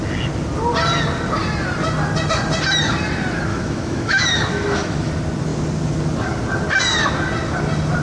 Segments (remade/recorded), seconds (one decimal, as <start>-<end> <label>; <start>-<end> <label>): 0.0-3.5 recorded; 3.5-5.1 remade; 5.1-8.0 recorded